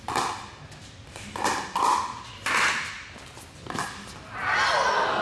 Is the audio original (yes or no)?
yes